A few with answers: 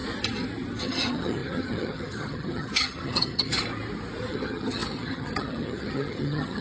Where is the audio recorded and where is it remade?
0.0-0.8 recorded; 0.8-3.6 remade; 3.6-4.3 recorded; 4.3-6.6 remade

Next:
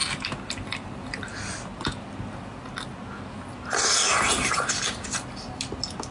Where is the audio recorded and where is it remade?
0.0-6.1 recorded

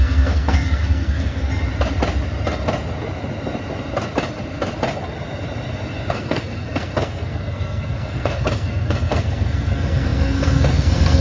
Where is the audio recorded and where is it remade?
0.0-1.5 remade; 1.5-6.1 recorded; 6.1-11.2 remade

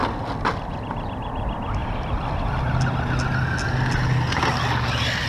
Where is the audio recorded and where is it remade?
0.0-5.3 recorded

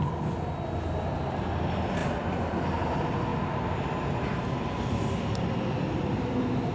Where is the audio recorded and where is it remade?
0.0-6.7 recorded